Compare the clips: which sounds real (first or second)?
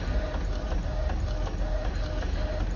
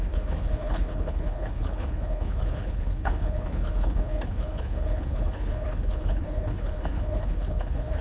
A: first